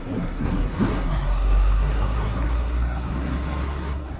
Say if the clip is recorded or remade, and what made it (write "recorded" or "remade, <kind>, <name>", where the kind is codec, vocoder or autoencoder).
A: remade, codec, SNAC